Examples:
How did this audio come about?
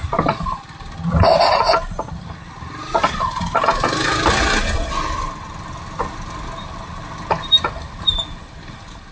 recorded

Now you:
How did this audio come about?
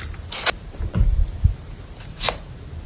recorded